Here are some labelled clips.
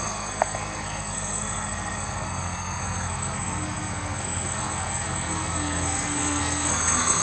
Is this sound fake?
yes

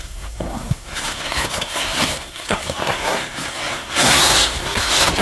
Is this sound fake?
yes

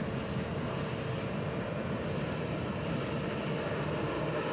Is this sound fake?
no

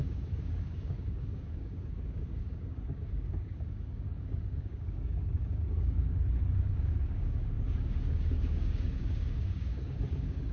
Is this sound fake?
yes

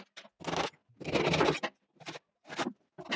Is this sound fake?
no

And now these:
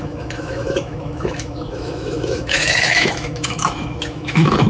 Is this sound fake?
yes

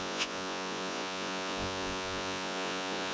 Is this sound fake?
yes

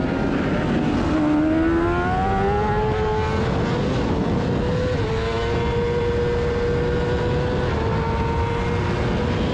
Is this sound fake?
no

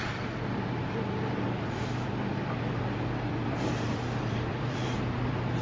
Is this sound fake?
yes